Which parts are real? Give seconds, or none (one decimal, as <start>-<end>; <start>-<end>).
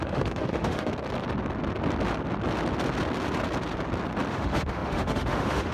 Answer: 0.9-4.3